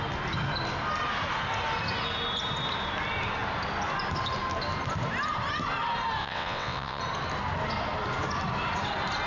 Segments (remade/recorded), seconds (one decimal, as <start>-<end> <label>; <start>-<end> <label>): 0.0-6.2 recorded; 6.2-7.0 remade; 7.0-9.3 recorded